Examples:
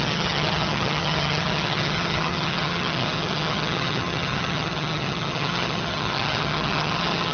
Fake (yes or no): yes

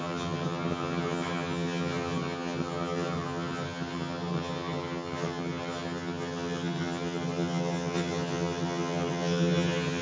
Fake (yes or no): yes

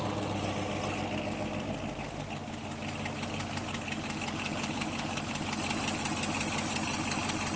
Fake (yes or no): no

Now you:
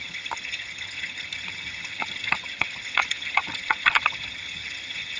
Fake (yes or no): yes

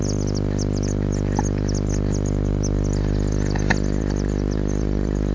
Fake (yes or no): no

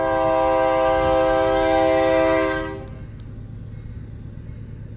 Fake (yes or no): no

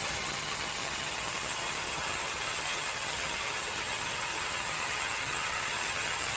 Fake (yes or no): yes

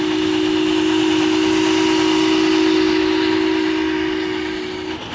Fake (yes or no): no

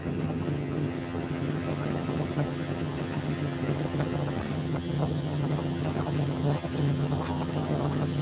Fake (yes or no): yes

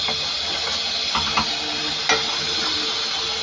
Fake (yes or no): no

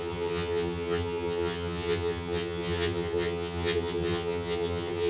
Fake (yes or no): yes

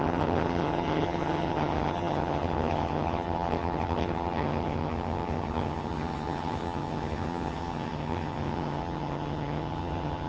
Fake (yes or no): yes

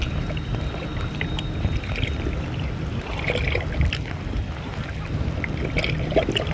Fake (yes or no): no